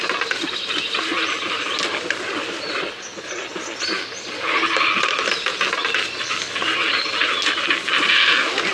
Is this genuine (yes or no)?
yes